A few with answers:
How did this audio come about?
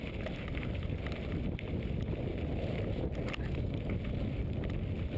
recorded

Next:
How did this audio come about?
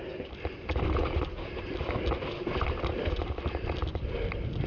recorded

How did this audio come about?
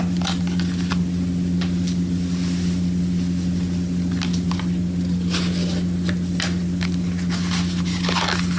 recorded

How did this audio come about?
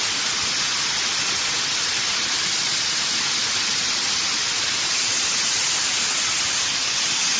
recorded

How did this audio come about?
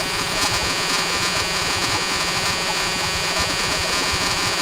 remade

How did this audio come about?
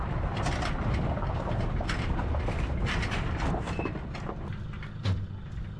recorded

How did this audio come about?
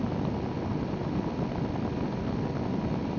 recorded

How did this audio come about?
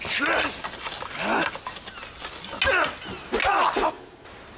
recorded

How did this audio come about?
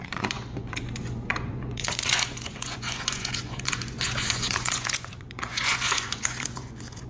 remade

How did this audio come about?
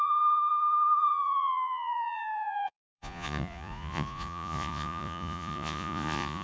remade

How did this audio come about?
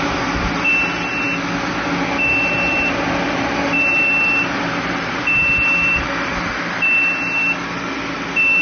recorded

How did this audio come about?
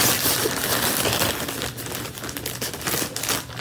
recorded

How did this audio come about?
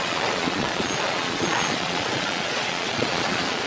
remade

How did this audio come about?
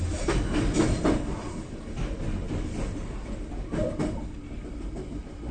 recorded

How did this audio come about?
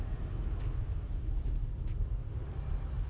recorded